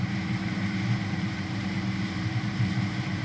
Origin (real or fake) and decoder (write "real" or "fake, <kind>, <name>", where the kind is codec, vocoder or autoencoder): fake, vocoder, BigVGAN v2